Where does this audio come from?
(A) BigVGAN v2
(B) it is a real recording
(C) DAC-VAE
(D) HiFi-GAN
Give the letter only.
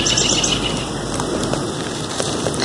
A